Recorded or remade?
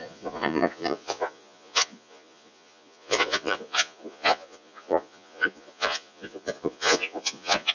remade